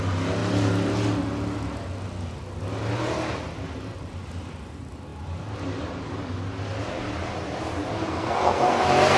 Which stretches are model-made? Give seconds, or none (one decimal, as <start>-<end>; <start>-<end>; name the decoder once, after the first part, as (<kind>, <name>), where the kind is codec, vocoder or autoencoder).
8.0-9.2 (codec, SNAC)